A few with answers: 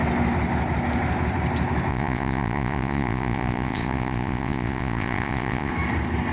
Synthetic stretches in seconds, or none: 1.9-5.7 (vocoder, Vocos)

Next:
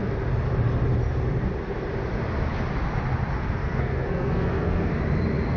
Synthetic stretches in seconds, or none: 3.6-4.9 (codec, SNAC)